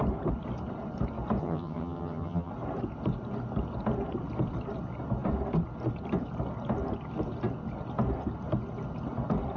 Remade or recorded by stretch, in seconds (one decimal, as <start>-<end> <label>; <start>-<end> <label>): 0.0-1.4 recorded; 1.4-2.5 remade; 2.5-9.6 recorded